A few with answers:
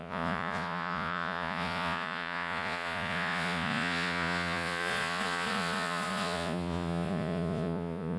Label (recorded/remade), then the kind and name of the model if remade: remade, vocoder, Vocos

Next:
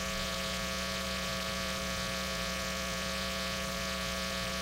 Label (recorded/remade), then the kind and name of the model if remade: remade, vocoder, Vocos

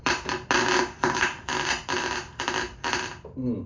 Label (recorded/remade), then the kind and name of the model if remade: recorded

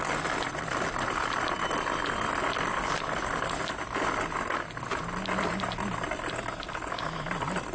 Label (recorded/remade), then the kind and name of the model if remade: recorded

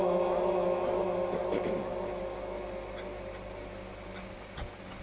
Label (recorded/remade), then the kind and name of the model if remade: recorded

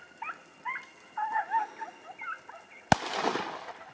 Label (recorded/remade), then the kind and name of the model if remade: recorded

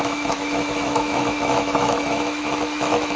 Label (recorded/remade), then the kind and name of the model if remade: remade, autoencoder, DAC-VAE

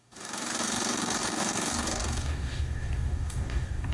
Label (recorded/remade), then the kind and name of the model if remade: remade, codec, DAC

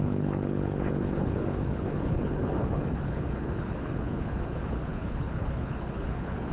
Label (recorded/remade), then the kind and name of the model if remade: remade, codec, HILCodec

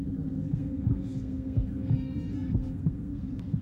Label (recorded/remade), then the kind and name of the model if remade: remade, codec, SNAC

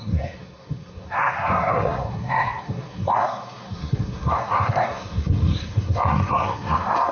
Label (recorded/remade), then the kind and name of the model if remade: remade, codec, SNAC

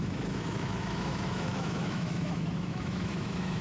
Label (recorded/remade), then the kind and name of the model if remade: remade, autoencoder, DAC-VAE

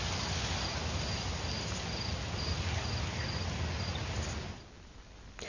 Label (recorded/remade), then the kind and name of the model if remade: recorded